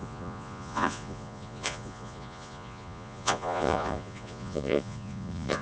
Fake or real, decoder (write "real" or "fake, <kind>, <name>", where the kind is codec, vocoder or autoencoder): fake, vocoder, Vocos